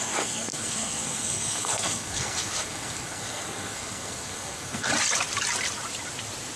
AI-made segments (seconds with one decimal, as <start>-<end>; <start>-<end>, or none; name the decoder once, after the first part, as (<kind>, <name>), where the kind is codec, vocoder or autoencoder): 0.0-4.9 (codec, SNAC)